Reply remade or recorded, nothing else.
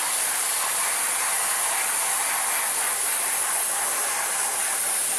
recorded